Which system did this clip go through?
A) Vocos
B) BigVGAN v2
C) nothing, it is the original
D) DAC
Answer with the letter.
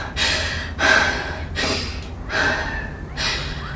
C